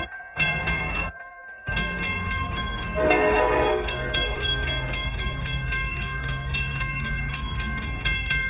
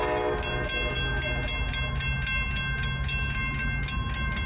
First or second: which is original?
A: second